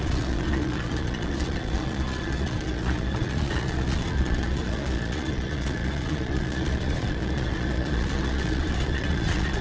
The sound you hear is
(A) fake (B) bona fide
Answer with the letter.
A